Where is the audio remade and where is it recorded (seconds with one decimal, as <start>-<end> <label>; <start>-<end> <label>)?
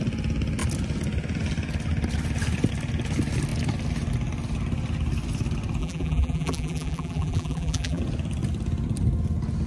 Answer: 0.0-5.8 recorded; 5.8-8.0 remade; 8.0-9.7 recorded